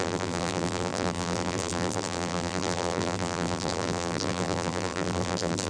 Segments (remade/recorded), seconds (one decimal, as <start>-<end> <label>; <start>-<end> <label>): 0.0-5.7 remade